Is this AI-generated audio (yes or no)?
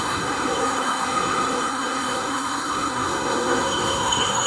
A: yes